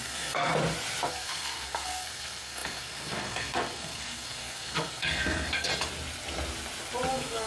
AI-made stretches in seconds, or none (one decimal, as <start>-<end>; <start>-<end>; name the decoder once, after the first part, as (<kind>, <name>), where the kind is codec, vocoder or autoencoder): 0.0-0.5 (codec, SNAC); 1.1-5.7; 7.1-7.5